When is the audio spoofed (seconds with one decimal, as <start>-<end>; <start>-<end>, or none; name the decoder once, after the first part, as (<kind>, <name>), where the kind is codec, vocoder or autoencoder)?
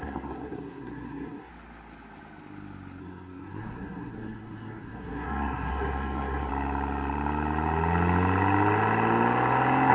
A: 0.0-1.5 (codec, SNAC); 3.0-6.5